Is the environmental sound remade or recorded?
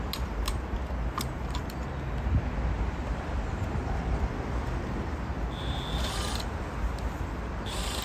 recorded